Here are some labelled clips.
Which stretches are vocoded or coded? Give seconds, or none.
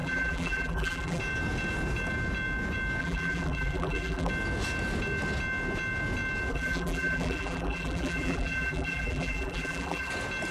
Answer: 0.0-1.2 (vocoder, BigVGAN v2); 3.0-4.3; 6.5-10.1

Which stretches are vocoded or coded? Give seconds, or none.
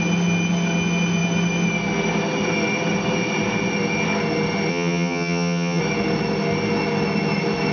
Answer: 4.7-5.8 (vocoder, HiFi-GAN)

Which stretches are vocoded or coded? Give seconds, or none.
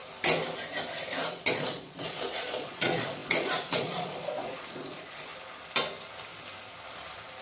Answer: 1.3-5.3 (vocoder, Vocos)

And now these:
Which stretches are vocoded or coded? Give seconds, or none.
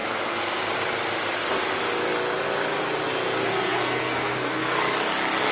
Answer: 3.5-4.8 (codec, SNAC)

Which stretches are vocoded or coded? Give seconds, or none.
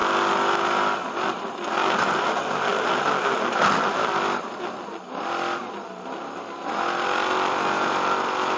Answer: none